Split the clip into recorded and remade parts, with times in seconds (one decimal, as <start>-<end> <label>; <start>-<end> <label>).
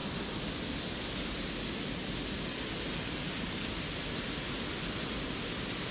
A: 0.0-5.9 recorded